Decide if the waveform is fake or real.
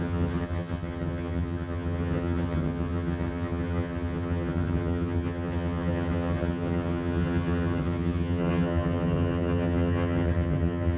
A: fake